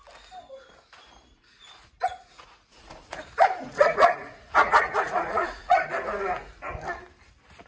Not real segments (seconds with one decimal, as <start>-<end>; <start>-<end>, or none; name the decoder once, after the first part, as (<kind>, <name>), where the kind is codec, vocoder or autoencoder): 1.3-5.9 (vocoder, Vocos)